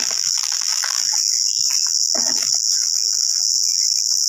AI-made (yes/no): yes